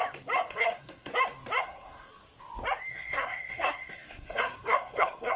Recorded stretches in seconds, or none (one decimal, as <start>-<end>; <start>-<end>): 0.0-0.5; 1.1-1.6; 2.1-2.9